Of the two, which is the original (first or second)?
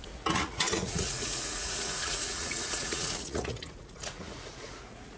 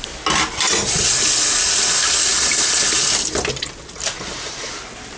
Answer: second